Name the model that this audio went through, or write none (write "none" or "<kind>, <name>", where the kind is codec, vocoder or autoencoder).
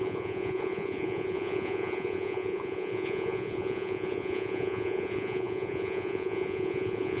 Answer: vocoder, Vocos